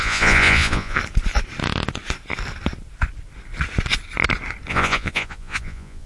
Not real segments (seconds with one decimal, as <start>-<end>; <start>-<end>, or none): 0.0-1.0; 4.7-6.1